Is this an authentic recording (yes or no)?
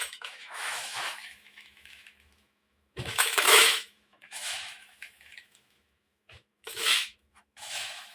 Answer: no